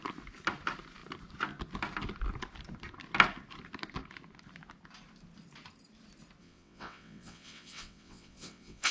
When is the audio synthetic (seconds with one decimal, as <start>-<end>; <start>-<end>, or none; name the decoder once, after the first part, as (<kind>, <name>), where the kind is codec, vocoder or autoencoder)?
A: 6.4-8.9 (vocoder, WaveNeXt)